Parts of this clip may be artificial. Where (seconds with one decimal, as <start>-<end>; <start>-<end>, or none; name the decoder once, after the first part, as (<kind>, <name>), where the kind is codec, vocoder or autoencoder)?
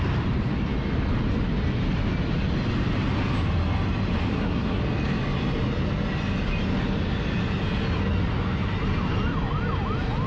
4.3-4.8 (codec, SNAC)